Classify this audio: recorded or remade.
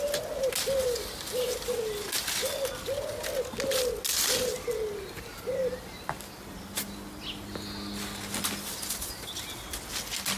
recorded